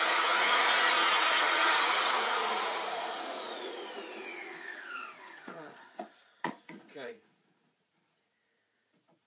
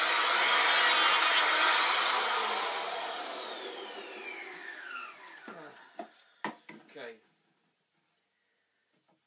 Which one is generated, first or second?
first